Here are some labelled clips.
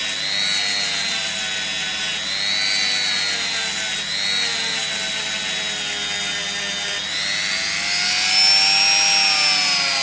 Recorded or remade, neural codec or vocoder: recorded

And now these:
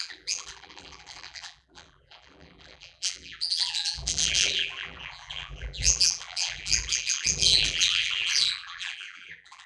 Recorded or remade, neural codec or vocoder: remade, vocoder, BigVGAN v2